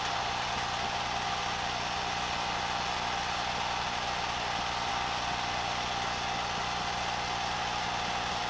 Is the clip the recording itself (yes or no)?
yes